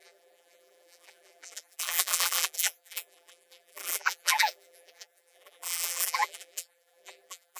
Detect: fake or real fake